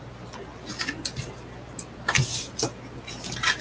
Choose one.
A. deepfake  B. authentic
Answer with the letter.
B